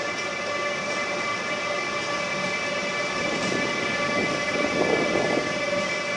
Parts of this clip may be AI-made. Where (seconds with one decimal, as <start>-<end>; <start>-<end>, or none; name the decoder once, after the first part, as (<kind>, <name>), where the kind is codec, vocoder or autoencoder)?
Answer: none